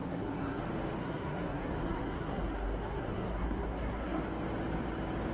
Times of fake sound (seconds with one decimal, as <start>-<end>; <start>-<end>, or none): 0.0-0.6; 1.0-4.2